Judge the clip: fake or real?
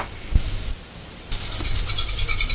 real